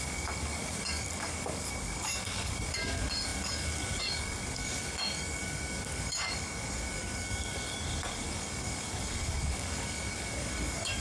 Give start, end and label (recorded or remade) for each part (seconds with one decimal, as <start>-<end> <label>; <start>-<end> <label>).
0.0-11.0 remade